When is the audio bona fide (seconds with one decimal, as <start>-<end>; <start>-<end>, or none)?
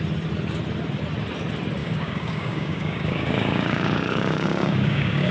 0.0-1.8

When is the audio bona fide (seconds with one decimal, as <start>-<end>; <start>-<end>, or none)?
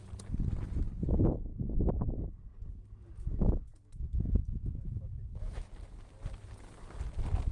0.0-3.7; 5.7-7.5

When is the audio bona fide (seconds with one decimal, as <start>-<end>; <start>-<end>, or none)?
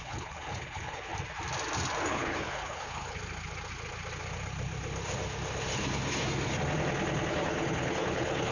1.1-2.1; 3.2-7.3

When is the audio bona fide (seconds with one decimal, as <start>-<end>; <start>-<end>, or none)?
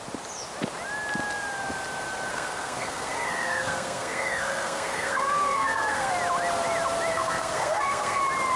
0.0-2.3; 6.1-7.1; 8.2-8.6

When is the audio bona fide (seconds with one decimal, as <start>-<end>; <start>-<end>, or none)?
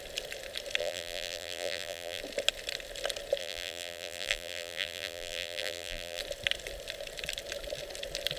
0.0-0.8; 2.2-3.4; 6.2-8.4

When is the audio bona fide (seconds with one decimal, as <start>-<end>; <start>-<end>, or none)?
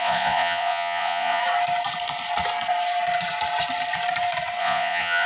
1.4-4.6